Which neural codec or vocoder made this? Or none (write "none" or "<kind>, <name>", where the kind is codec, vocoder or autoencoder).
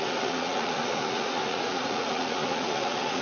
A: vocoder, Vocos